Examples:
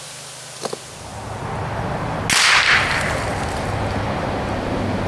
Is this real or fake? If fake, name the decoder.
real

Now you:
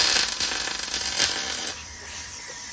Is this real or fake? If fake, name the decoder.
fake, vocoder, BigVGAN v2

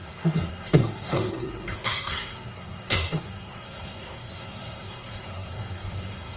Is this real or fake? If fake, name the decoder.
fake, codec, SNAC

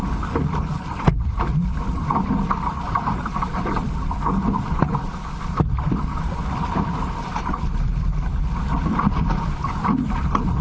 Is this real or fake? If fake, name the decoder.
fake, vocoder, BigVGAN v2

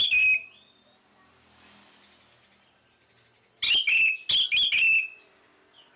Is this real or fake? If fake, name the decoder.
real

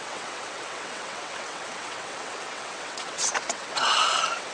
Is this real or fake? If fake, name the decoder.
fake, vocoder, WaveNeXt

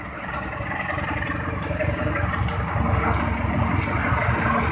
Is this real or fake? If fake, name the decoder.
real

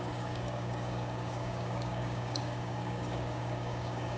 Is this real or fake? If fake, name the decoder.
fake, codec, DAC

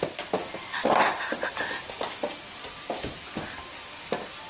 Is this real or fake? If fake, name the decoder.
real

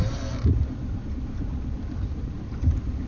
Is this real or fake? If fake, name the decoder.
fake, vocoder, BigVGAN v2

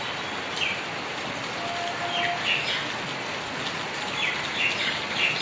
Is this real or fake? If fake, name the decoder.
real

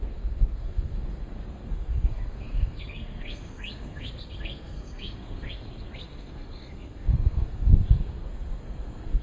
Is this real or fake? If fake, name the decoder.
fake, codec, SNAC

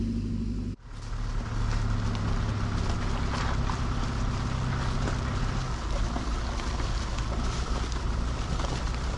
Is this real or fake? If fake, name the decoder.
real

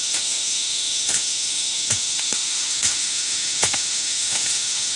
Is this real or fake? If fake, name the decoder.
fake, autoencoder, DAC-VAE